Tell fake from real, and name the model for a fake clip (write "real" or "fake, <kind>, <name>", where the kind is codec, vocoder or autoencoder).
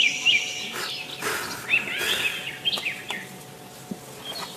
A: real